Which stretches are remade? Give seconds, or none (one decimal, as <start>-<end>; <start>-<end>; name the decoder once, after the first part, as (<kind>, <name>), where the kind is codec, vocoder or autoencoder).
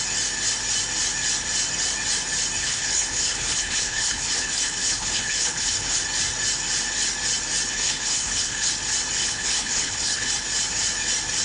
2.6-6.0 (codec, HILCodec); 7.7-8.7; 9.2-10.3